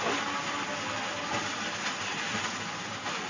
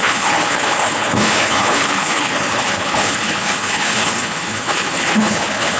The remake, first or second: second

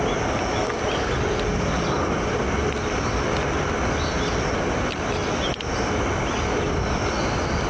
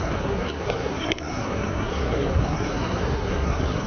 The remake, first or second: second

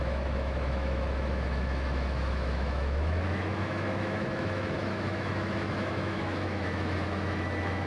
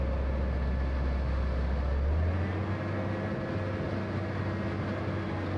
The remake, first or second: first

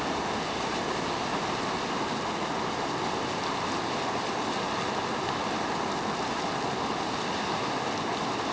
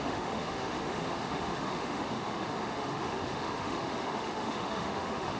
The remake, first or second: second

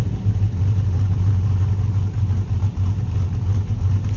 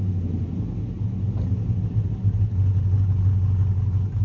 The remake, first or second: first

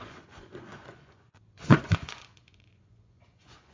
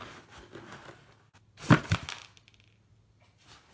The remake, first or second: first